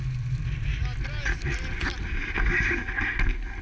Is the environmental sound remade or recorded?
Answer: recorded